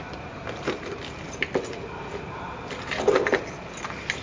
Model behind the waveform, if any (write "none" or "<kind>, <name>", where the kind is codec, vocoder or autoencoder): none